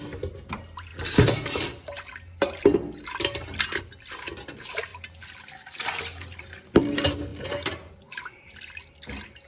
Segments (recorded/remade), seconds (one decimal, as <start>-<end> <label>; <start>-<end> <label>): 0.0-9.5 recorded